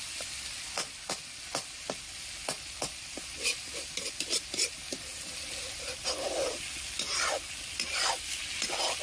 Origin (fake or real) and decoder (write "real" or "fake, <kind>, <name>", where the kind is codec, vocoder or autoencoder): real